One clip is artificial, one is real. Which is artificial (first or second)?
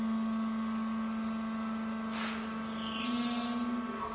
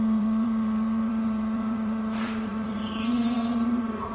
second